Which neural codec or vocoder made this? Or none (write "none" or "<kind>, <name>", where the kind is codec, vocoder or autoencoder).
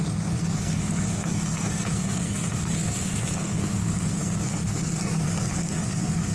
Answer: codec, SNAC